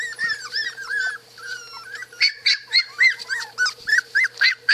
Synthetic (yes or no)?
yes